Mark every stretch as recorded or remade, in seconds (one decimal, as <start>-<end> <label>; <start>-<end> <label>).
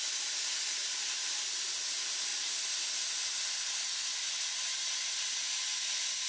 0.0-6.3 recorded